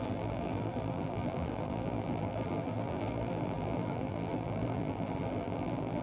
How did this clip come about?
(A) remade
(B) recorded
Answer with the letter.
A